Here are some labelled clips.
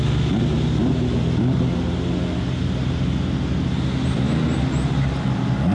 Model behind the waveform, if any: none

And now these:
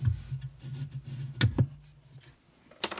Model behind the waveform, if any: none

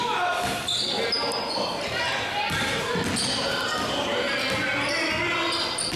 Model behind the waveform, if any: none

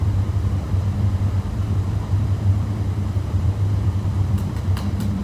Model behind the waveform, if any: vocoder, BigVGAN v2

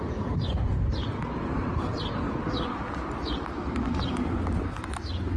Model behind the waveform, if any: none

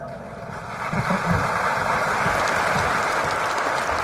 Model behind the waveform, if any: none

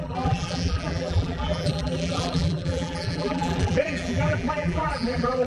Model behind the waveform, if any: vocoder, BigVGAN v2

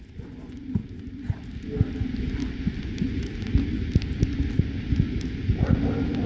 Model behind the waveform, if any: none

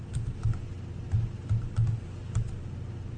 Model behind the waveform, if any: none